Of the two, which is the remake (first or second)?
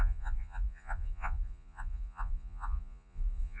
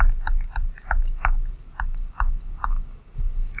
first